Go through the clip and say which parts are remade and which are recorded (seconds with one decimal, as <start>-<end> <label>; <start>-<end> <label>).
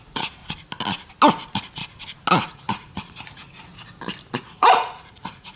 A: 0.0-0.4 remade; 0.4-1.3 recorded; 1.3-1.8 remade; 1.8-2.5 recorded; 2.5-3.7 remade; 3.7-4.4 recorded; 4.4-5.6 remade